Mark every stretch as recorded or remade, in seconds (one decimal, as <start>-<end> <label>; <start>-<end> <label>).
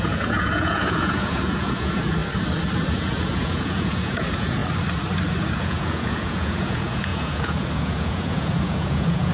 0.0-2.2 remade; 2.2-2.9 recorded; 2.9-4.6 remade; 4.6-5.5 recorded; 5.5-9.3 remade